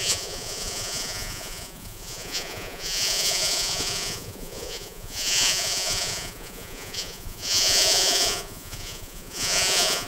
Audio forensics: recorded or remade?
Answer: remade